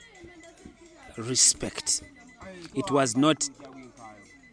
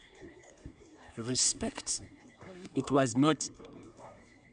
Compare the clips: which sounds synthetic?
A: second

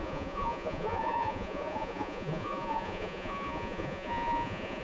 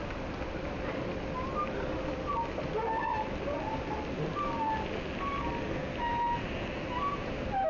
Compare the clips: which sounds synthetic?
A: first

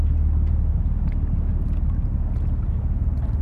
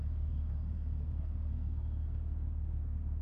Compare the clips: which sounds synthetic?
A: second